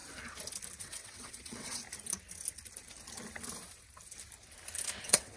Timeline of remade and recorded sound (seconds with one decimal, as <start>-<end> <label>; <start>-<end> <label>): 0.0-0.8 recorded; 0.8-1.8 remade; 1.8-5.0 recorded; 5.0-5.4 remade

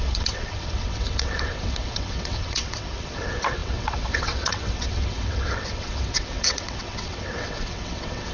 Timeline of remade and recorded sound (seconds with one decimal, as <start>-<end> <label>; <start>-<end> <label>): 0.0-8.3 remade

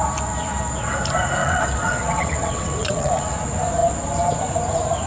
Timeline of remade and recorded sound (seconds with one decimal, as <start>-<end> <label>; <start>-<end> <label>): 0.0-1.4 recorded; 1.4-3.4 remade; 3.4-5.1 recorded

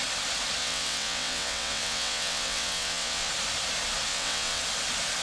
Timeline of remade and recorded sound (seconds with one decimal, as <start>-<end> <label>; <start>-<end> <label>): 0.0-0.6 recorded; 0.6-3.3 remade; 3.3-4.1 recorded; 4.1-4.6 remade; 4.6-5.2 recorded

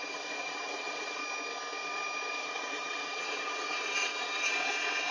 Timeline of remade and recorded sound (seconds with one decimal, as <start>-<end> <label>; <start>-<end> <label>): 0.0-1.2 remade; 1.2-2.4 recorded; 2.4-5.1 remade

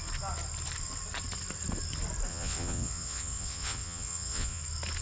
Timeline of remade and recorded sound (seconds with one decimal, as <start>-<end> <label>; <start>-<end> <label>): 0.0-2.3 recorded; 2.3-4.6 remade; 4.6-5.0 recorded

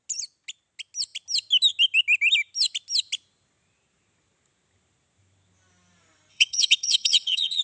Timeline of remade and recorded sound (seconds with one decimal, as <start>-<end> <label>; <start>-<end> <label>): 0.0-6.3 recorded; 6.3-7.6 remade

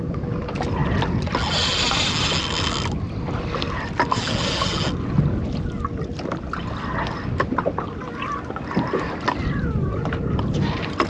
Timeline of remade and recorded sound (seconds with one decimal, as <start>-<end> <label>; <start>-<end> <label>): 0.0-11.1 recorded